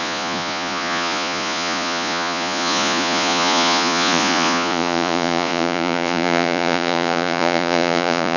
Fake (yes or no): yes